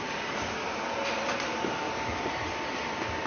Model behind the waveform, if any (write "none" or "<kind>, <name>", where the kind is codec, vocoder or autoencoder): none